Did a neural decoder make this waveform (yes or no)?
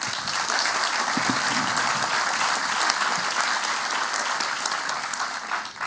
no